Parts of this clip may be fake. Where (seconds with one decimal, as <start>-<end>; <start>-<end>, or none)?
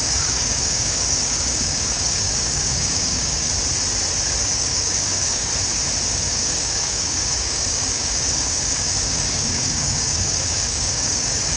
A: 0.0-3.5; 4.4-5.5; 6.1-11.6